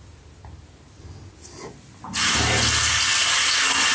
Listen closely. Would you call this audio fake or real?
real